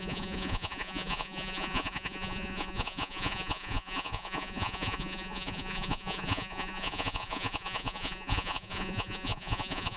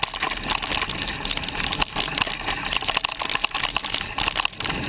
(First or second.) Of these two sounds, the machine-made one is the first